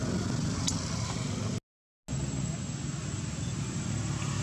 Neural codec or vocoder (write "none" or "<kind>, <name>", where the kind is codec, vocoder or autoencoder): none